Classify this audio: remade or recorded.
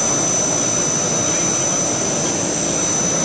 recorded